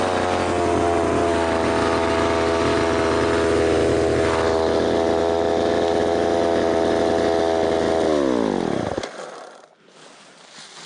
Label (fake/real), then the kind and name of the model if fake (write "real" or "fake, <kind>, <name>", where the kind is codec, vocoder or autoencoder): real